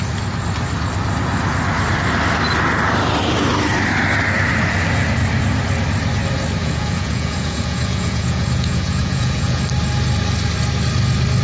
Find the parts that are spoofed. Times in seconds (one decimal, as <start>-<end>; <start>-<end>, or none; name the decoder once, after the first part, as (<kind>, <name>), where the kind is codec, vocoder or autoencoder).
6.6-9.6 (vocoder, Vocos)